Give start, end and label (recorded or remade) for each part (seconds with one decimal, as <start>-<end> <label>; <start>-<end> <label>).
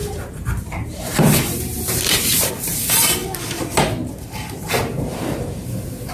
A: 0.0-2.5 remade; 2.5-5.1 recorded; 5.1-6.1 remade